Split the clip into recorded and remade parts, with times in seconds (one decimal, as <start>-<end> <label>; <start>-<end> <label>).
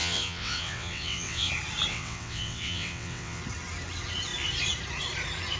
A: 0.0-1.5 remade; 1.5-1.9 recorded; 1.9-3.4 remade; 3.4-5.6 recorded